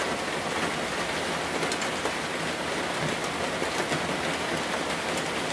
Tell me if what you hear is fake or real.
real